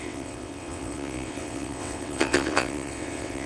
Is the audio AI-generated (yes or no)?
yes